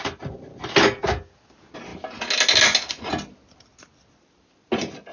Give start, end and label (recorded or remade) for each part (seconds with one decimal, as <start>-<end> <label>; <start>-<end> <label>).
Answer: 0.0-5.1 recorded